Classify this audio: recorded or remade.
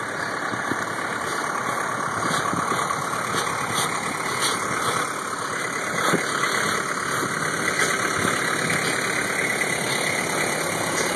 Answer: recorded